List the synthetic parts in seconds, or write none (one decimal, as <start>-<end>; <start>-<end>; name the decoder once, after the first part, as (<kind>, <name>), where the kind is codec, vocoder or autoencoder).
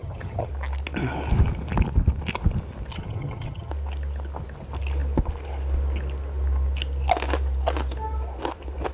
0.0-0.5 (vocoder, HiFi-GAN); 2.9-3.7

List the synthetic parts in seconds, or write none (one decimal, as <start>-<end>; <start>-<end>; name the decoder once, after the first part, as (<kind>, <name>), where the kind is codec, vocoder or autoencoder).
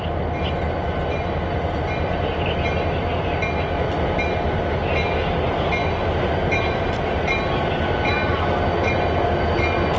none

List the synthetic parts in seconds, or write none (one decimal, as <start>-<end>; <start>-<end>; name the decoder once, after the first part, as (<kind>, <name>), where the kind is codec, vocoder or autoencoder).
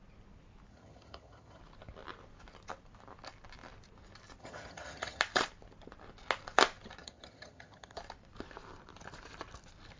0.7-1.6 (vocoder, HiFi-GAN); 4.4-5.2; 7.0-8.0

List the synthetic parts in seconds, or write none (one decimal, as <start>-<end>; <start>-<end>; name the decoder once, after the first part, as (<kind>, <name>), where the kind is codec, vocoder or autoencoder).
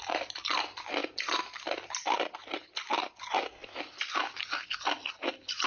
none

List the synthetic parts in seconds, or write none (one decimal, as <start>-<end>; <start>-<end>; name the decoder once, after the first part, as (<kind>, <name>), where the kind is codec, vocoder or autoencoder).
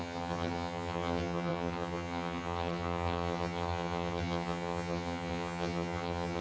0.0-6.4 (vocoder, HiFi-GAN)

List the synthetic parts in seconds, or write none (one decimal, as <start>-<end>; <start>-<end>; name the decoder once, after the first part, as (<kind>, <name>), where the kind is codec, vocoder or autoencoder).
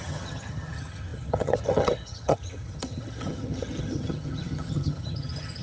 0.0-5.6 (vocoder, HiFi-GAN)